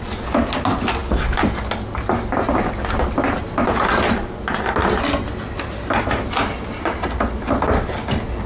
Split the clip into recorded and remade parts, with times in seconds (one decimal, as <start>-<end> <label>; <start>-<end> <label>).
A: 0.0-8.5 recorded